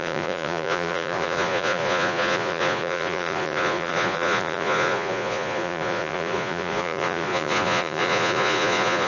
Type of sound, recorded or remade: remade